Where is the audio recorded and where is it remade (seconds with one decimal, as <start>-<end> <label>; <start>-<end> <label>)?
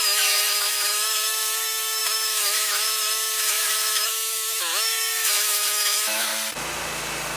0.0-6.3 remade; 6.3-7.4 recorded